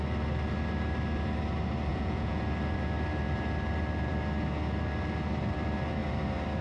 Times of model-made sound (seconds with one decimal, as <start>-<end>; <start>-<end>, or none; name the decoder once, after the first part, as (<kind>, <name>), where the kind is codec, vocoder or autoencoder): 1.9-2.4 (vocoder, Vocos)